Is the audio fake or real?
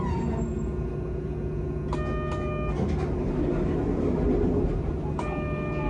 real